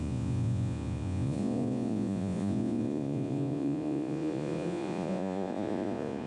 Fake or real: fake